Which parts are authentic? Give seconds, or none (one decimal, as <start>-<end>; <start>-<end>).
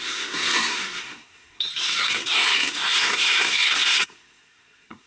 none